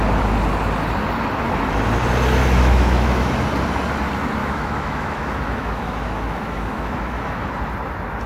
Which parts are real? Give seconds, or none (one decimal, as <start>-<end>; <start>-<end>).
0.0-2.4; 3.4-4.4; 7.5-8.3